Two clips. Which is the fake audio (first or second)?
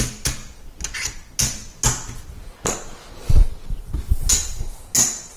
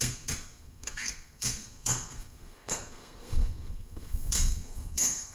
second